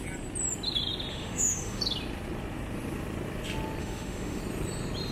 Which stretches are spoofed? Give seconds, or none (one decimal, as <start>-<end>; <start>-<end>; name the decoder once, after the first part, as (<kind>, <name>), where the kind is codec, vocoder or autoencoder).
1.1-1.8 (autoencoder, DAC-VAE); 3.8-4.4